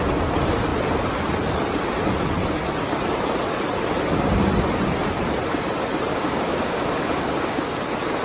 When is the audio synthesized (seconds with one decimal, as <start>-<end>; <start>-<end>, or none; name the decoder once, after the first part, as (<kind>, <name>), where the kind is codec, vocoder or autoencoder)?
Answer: 6.1-7.7 (codec, DAC)